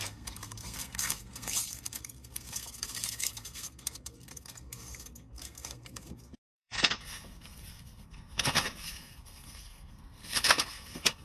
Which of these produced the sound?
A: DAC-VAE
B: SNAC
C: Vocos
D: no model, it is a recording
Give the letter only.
B